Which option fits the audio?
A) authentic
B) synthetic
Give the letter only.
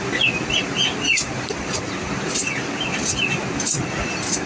A